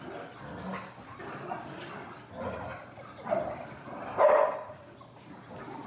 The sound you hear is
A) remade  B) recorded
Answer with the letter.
B